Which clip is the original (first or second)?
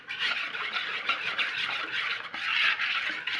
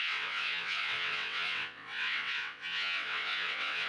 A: first